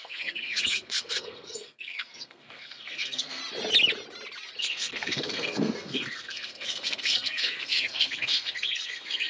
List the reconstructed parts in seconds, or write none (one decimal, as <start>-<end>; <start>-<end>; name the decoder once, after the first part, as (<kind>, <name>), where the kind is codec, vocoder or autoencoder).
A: 0.0-3.4 (codec, SNAC); 4.6-9.3